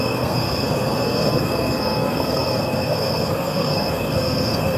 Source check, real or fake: fake